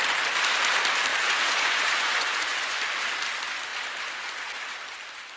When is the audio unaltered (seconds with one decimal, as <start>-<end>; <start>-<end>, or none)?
0.0-1.1; 2.8-5.4